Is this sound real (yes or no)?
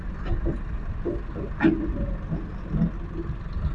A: yes